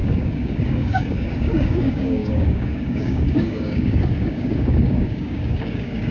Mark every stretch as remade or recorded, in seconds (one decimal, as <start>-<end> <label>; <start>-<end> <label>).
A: 0.0-6.1 remade